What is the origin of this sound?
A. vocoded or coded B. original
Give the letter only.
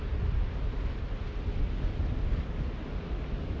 B